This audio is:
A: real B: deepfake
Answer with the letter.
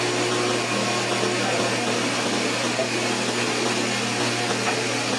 A